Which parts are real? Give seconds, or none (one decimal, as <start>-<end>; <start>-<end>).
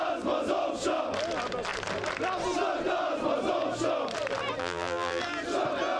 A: 0.0-4.6; 5.2-6.0